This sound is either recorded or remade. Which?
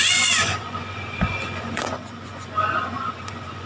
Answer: remade